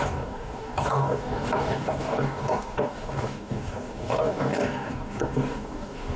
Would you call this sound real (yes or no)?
no